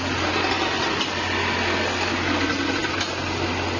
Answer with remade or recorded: recorded